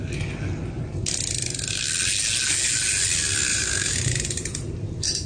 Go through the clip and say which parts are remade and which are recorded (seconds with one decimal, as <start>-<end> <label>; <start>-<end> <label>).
0.0-3.5 recorded; 3.5-5.3 remade